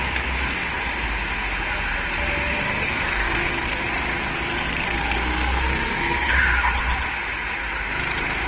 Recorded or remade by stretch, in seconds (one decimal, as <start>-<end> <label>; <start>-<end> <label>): 0.0-2.6 recorded; 2.6-3.8 remade; 3.8-4.5 recorded; 4.5-6.3 remade; 6.3-8.5 recorded